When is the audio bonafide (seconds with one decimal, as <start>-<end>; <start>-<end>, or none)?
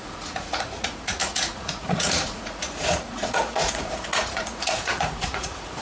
none